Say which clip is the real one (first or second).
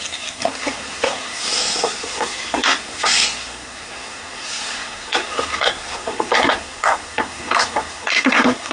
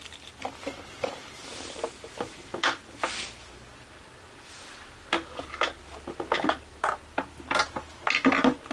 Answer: second